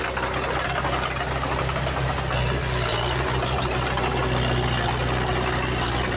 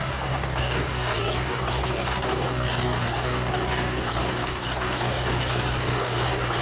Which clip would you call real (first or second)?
first